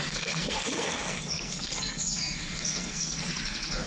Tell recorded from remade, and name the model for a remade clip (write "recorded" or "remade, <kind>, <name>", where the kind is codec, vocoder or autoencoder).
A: remade, codec, SNAC